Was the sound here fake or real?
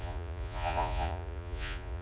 fake